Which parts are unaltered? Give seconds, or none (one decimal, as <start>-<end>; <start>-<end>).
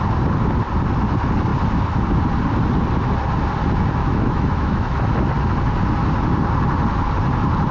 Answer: 0.0-4.0; 5.0-7.7